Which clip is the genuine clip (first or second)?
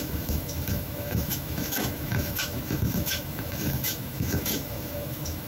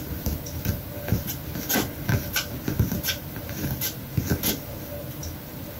second